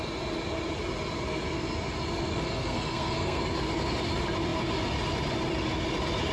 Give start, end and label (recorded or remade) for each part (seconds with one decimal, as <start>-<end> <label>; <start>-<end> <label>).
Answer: 0.0-2.3 recorded; 2.3-3.4 remade; 3.4-6.3 recorded